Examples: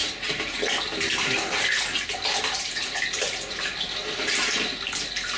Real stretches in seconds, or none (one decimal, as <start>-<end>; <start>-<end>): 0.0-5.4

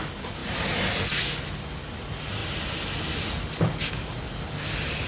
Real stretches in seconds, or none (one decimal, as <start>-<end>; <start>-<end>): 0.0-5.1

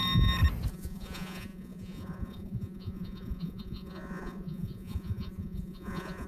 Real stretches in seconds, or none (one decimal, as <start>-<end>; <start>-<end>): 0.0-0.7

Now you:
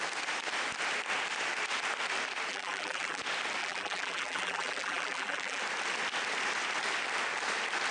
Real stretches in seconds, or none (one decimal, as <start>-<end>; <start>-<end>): 0.0-2.5; 3.2-3.6; 5.6-7.9

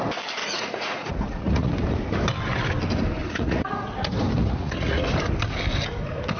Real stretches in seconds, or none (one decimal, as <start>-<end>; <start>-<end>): 0.0-0.4; 1.7-3.2; 3.7-4.4; 5.0-6.4

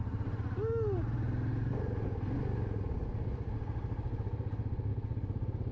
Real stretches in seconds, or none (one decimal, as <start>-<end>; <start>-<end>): 0.0-5.7